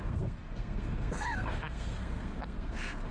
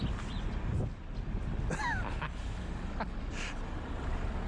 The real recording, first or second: second